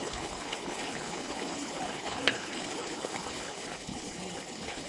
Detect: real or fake fake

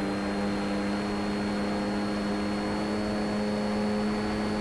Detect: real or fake real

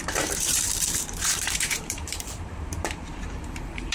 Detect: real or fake fake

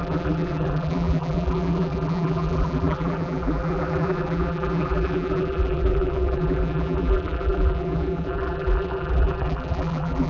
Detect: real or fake fake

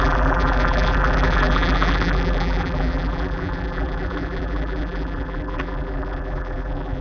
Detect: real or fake fake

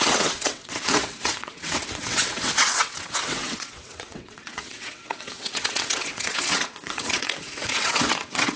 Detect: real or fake fake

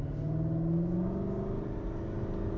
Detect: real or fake real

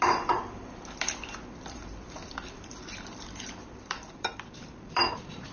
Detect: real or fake fake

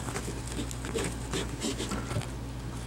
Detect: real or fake real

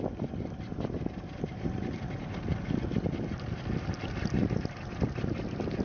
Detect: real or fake real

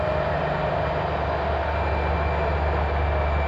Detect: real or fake real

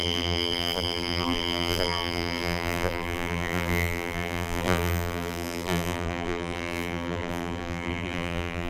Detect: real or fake fake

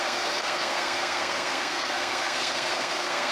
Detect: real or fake fake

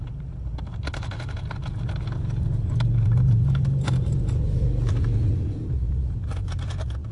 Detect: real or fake real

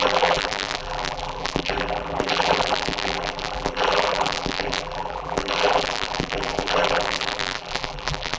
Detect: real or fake fake